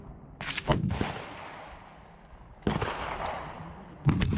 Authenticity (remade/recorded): recorded